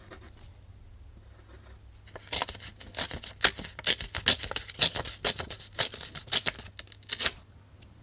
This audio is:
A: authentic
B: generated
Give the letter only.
A